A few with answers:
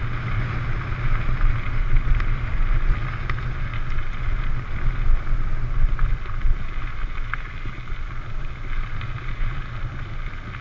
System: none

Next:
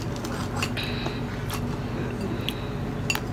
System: none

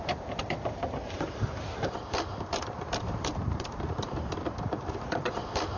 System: vocoder, BigVGAN v2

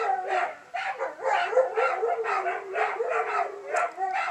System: vocoder, BigVGAN v2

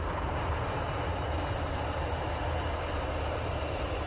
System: vocoder, BigVGAN v2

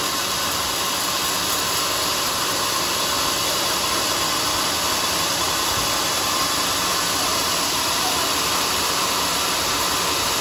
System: vocoder, BigVGAN v2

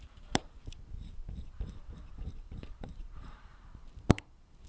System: vocoder, BigVGAN v2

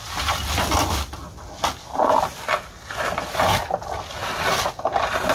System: none